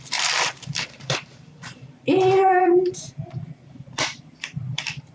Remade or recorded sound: remade